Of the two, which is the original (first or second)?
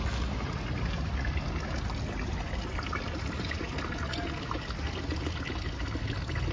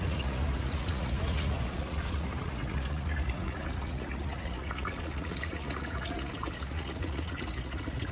first